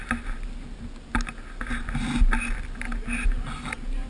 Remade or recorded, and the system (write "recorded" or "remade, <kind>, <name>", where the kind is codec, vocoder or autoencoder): recorded